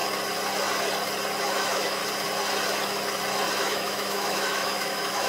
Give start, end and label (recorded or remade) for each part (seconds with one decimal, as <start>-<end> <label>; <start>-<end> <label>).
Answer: 0.0-1.5 recorded; 1.5-2.0 remade; 2.0-3.6 recorded; 3.6-5.3 remade